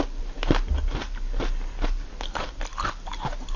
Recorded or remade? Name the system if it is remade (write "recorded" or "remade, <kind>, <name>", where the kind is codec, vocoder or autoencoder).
recorded